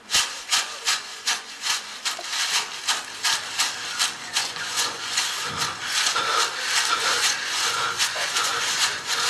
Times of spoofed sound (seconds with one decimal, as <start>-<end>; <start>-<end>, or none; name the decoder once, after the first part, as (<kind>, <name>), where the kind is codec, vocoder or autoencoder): 0.0-1.9 (vocoder, Vocos); 4.2-6.3; 6.9-9.3

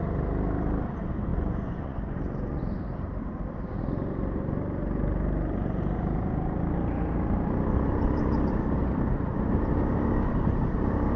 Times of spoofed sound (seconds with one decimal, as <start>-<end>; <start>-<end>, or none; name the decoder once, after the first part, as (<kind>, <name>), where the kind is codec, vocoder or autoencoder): 1.3-2.6 (vocoder, Vocos)